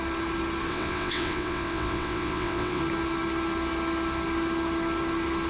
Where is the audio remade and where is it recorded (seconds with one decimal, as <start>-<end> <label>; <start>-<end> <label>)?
0.0-0.7 recorded; 0.7-2.8 remade; 2.8-5.5 recorded